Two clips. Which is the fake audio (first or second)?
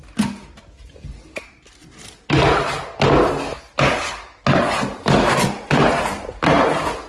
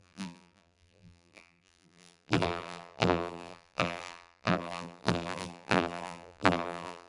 second